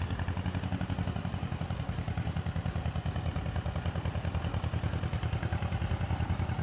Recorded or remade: recorded